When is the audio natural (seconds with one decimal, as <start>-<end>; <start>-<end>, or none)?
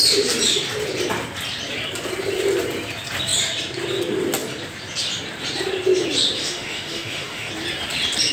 0.0-6.4; 7.5-8.3